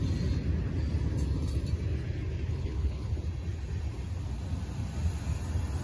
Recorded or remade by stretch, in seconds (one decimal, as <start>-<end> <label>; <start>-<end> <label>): 0.0-2.5 recorded; 2.5-3.2 remade; 3.2-5.8 recorded